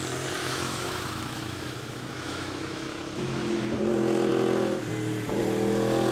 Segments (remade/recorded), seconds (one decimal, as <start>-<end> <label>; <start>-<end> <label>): 0.0-0.4 recorded; 0.4-3.8 remade; 3.8-6.1 recorded